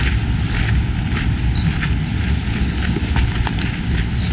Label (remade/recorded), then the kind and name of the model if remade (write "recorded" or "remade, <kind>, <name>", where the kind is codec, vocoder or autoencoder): recorded